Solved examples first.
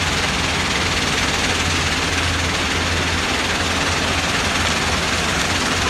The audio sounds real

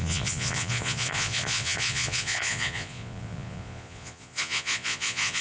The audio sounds fake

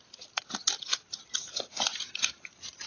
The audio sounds fake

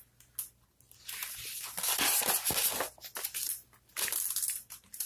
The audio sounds real